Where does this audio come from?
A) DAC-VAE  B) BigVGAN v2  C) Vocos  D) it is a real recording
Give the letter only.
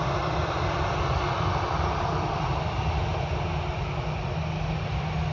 D